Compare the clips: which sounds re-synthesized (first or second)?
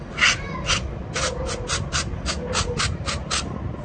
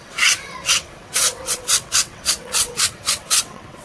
second